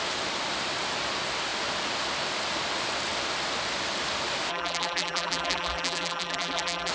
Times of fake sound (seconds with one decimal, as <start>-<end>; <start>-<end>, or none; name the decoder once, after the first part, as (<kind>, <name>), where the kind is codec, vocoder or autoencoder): 4.5-6.9 (vocoder, BigVGAN v2)